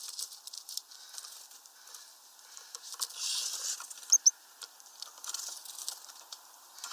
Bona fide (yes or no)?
yes